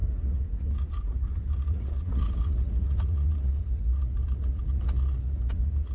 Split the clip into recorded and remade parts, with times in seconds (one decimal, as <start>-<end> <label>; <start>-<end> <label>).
0.0-5.9 remade